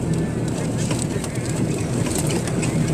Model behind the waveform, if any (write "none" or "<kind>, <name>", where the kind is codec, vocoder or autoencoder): none